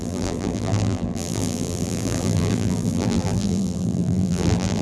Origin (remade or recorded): remade